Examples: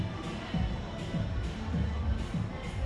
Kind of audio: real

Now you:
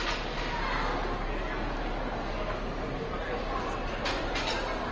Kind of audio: real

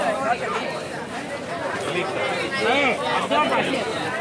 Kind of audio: real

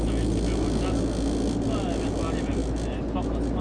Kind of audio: real